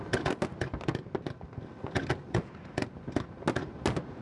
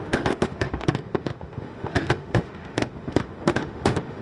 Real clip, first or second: first